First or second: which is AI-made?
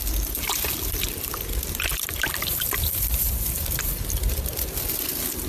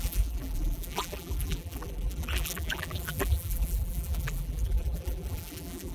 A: second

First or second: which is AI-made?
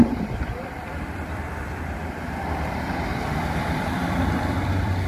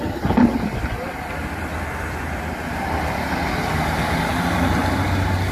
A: first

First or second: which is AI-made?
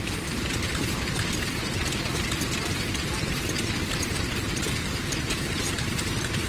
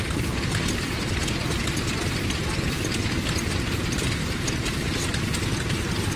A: first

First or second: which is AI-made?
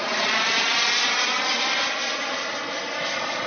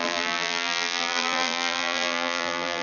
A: second